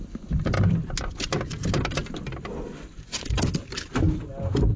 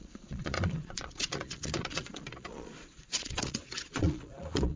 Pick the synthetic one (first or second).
second